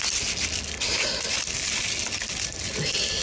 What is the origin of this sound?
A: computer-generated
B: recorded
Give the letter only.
B